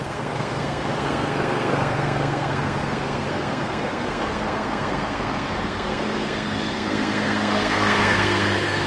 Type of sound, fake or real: fake